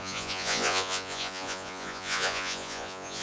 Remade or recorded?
remade